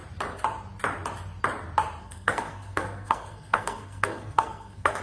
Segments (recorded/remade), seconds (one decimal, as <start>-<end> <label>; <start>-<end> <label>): 0.0-2.0 recorded; 2.0-5.0 remade